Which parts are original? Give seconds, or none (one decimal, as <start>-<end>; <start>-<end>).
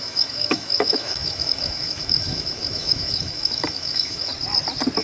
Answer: 4.3-5.0